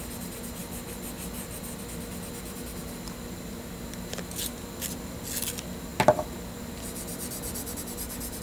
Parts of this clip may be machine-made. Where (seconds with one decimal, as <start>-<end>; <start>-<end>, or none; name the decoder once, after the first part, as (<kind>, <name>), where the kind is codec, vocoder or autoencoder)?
none